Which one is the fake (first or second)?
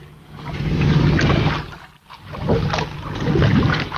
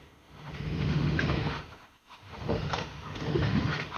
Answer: second